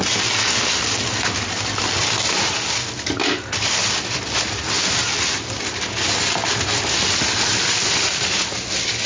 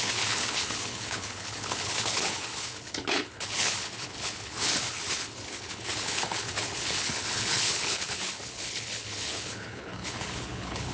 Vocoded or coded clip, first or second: second